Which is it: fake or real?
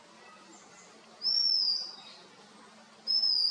real